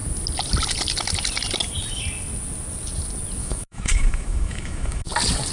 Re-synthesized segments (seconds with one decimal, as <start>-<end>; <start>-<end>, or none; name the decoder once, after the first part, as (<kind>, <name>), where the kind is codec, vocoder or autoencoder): 3.4-5.1 (autoencoder, DAC-VAE)